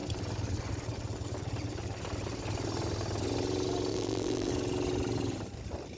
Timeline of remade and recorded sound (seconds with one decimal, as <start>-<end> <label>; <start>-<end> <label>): 0.0-3.9 recorded; 3.9-4.5 remade; 4.5-6.0 recorded